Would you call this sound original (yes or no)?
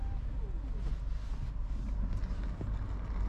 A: yes